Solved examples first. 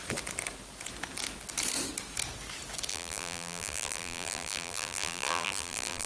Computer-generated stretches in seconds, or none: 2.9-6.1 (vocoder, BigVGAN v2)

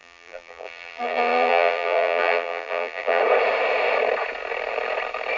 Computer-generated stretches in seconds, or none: 0.0-3.2 (vocoder, BigVGAN v2)

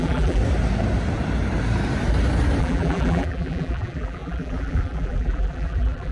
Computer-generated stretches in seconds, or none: 0.0-0.4 (vocoder, BigVGAN v2); 2.6-6.1